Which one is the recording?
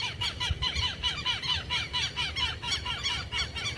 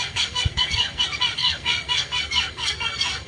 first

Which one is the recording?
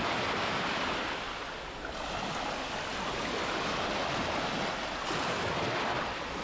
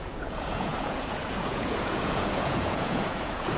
first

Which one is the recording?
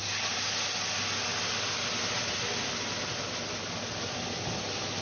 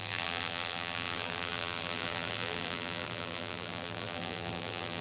first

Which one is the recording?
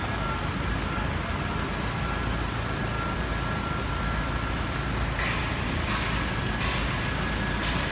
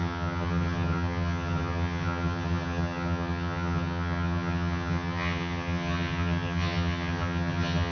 first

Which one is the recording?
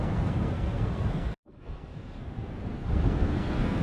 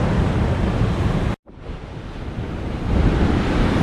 second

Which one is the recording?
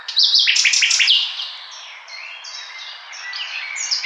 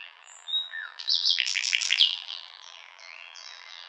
first